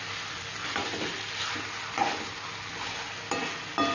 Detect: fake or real real